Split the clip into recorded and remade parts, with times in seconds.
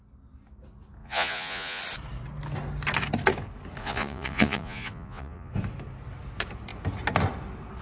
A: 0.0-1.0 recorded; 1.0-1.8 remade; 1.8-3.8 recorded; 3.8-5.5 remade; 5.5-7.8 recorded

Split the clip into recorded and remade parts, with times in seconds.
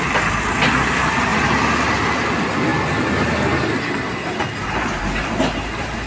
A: 0.0-6.1 recorded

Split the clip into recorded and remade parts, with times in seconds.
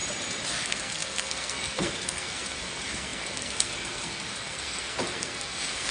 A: 0.0-0.5 recorded; 0.5-5.9 remade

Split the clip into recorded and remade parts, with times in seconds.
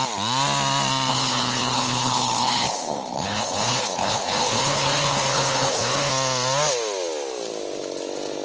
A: 0.0-1.1 recorded; 1.1-6.1 remade; 6.1-8.4 recorded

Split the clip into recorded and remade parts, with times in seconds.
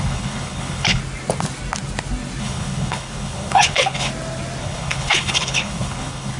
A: 0.0-1.0 remade; 1.0-2.4 recorded; 2.4-4.1 remade; 4.1-4.6 recorded; 4.6-6.4 remade